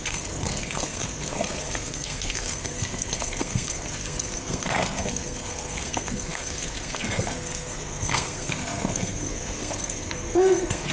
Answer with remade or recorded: remade